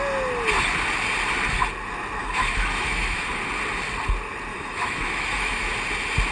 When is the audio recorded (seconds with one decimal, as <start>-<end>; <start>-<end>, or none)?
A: 0.0-2.2; 3.3-4.5; 5.7-6.3

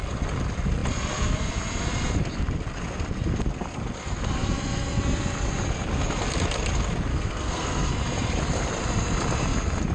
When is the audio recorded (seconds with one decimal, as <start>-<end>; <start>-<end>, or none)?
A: 0.0-7.1; 7.9-9.9

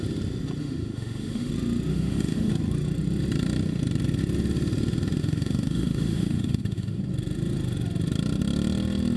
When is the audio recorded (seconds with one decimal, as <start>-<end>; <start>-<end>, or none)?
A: 0.0-0.6; 1.5-1.9; 2.5-5.2; 7.0-9.2

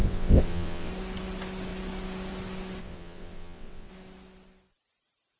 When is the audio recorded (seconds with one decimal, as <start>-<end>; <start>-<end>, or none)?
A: 0.9-2.8; 3.9-5.4